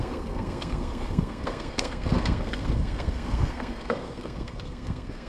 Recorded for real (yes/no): no